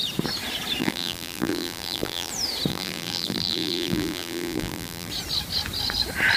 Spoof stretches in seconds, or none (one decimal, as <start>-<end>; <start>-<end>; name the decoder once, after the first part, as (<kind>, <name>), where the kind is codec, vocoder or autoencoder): 0.8-2.3 (vocoder, BigVGAN v2); 2.7-5.1